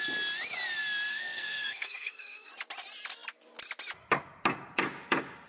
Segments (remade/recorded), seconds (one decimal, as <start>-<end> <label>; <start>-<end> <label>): 0.0-1.1 recorded; 1.1-2.5 remade; 2.5-5.5 recorded